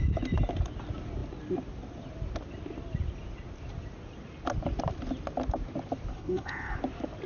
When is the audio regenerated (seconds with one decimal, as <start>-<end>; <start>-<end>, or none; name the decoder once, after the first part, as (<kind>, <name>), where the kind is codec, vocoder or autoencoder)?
6.1-6.8 (codec, HILCodec)